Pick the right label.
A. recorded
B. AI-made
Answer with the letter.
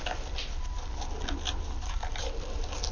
A